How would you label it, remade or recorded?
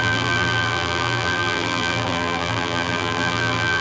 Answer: remade